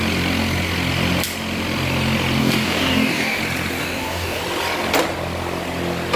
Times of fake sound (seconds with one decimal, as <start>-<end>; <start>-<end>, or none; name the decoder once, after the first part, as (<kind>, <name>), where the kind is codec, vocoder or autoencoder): 2.4-3.4 (codec, DAC); 3.8-4.4